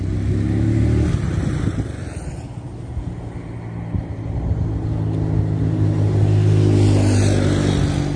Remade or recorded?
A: recorded